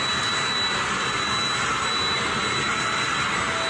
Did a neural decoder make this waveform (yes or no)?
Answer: no